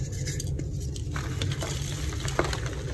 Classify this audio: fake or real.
real